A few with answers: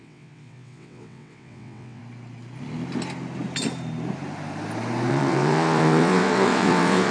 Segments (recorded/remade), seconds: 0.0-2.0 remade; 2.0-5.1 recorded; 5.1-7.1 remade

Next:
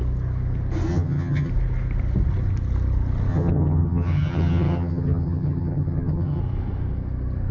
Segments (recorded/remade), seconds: 0.0-0.9 recorded; 0.9-1.5 remade; 1.5-3.3 recorded; 3.3-6.4 remade; 6.4-7.5 recorded

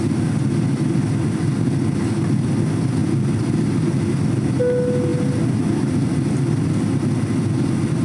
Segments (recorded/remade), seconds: 0.0-8.0 recorded

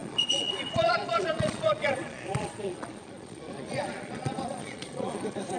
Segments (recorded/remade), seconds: 0.0-5.6 remade

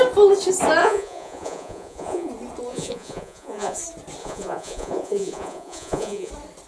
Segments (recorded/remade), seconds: 0.0-0.8 recorded; 0.8-2.3 remade; 2.3-2.7 recorded; 2.7-3.8 remade; 3.8-4.2 recorded; 4.2-6.3 remade; 6.3-6.7 recorded